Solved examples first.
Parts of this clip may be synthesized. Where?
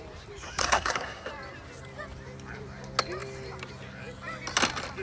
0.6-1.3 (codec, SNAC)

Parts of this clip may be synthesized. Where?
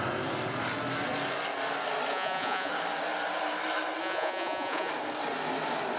2.1-2.7 (vocoder, Vocos); 4.0-4.9